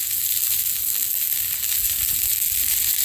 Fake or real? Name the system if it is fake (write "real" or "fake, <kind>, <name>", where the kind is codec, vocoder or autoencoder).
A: real